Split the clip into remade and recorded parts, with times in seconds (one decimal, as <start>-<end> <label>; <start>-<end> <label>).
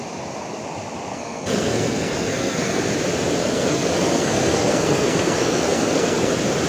0.0-1.1 recorded; 1.1-2.8 remade; 2.8-3.4 recorded; 3.4-6.3 remade; 6.3-6.7 recorded